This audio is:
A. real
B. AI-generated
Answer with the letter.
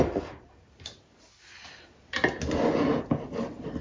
A